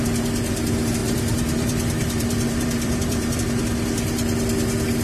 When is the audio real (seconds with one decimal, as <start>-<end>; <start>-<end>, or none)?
0.0-1.0; 3.6-5.0